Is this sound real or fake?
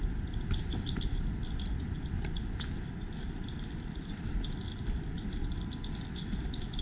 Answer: real